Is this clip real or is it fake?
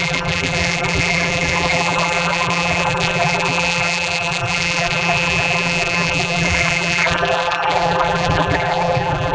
fake